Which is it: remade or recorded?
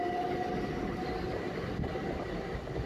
recorded